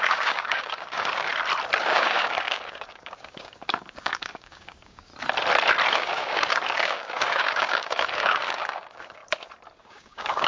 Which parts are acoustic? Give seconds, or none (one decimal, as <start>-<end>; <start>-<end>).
1.3-1.8; 5.1-5.9; 9.2-9.8